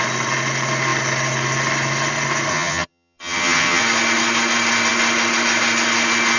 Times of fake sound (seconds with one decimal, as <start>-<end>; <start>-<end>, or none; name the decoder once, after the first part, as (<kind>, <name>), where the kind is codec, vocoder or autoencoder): 2.5-3.8 (vocoder, HiFi-GAN)